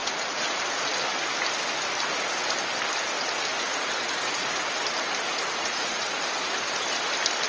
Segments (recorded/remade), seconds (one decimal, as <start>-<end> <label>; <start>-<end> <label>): 0.0-0.6 remade; 0.6-3.5 recorded; 3.5-4.7 remade; 4.7-5.3 recorded; 5.3-6.2 remade; 6.2-7.5 recorded